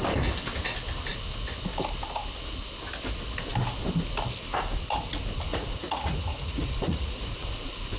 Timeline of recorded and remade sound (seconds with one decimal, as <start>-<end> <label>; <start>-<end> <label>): 0.0-5.5 recorded; 5.5-8.0 remade